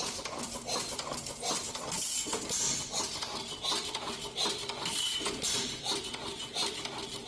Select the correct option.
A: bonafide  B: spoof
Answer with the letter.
A